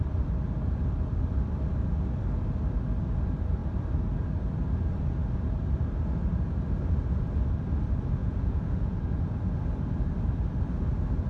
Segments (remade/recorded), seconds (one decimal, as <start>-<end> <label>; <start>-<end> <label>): 0.0-8.2 recorded; 8.2-9.0 remade; 9.0-11.3 recorded